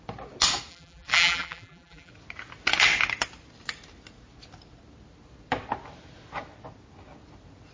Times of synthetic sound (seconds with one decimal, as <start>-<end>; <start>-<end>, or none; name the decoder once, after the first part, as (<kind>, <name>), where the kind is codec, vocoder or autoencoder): 0.7-2.1 (vocoder, BigVGAN v2)